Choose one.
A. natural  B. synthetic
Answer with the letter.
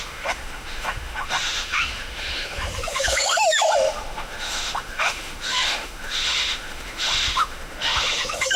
B